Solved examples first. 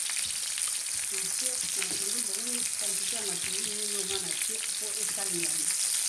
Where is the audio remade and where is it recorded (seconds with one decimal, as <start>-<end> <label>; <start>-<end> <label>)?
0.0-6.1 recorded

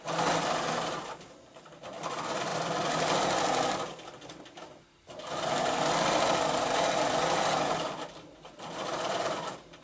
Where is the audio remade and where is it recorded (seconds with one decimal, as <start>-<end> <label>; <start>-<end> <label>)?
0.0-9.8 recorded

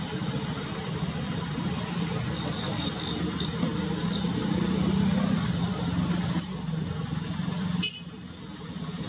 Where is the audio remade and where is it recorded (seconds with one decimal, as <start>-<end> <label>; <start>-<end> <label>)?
0.0-9.1 recorded

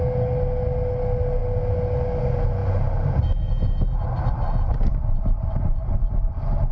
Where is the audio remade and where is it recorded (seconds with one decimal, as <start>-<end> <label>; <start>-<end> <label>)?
0.0-6.7 recorded

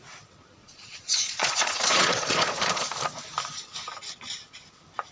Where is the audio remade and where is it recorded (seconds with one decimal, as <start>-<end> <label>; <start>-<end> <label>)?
0.0-0.6 recorded; 0.6-2.9 remade; 2.9-5.1 recorded

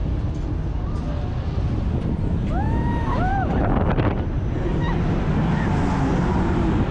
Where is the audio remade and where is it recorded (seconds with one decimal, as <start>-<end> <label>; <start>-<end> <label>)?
0.0-6.9 recorded

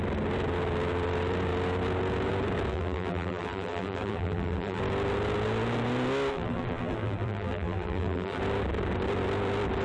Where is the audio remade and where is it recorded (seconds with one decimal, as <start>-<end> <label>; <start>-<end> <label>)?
0.0-2.7 recorded; 2.7-4.8 remade; 4.8-6.3 recorded; 6.3-8.4 remade; 8.4-9.8 recorded